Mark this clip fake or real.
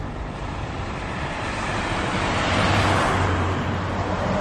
fake